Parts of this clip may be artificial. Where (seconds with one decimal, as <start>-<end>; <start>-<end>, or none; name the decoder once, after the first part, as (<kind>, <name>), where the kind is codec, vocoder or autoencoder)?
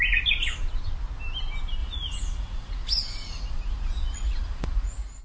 1.8-5.2 (vocoder, Vocos)